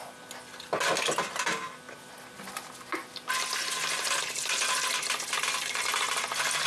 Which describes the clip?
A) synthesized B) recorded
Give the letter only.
B